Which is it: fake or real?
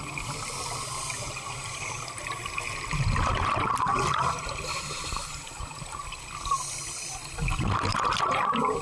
real